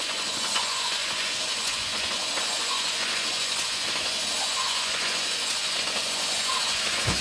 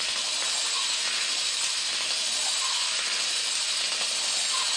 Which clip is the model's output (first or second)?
first